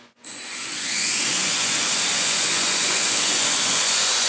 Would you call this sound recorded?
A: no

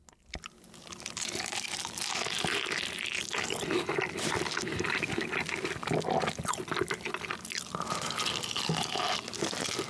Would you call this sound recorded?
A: yes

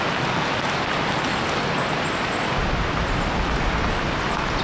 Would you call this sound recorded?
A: yes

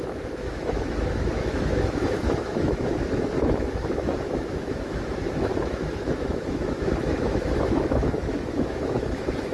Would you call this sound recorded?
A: no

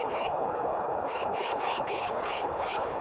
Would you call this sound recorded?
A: no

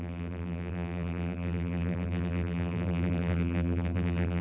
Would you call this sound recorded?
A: no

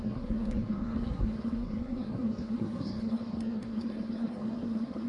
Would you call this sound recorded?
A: no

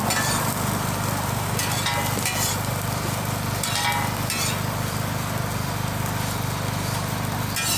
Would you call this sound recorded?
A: no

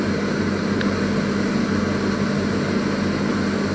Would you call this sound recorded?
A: yes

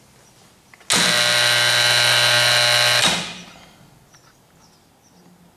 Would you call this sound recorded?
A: yes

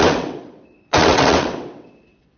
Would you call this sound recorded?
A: no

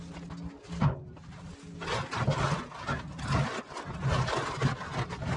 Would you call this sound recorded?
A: yes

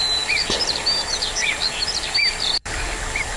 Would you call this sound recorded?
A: yes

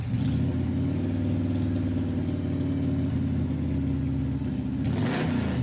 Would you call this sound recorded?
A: yes